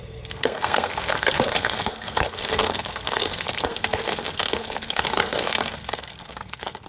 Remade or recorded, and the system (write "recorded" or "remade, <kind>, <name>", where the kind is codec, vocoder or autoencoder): remade, codec, SNAC